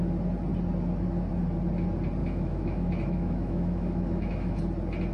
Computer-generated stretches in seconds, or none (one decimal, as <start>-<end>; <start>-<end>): 2.2-4.6

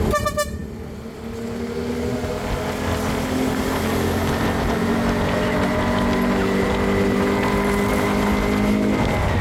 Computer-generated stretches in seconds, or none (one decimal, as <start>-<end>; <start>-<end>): none

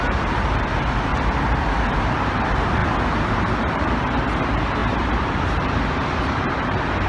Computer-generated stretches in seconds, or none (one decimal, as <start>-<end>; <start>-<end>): 0.0-1.1; 2.0-2.8; 3.6-7.1

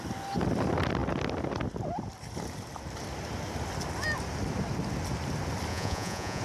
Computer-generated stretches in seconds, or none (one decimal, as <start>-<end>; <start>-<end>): 5.7-6.4

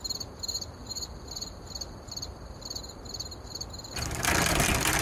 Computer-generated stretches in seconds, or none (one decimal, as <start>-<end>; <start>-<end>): none